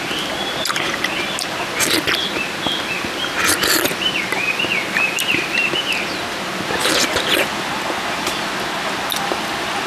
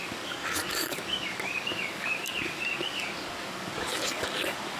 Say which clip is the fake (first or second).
second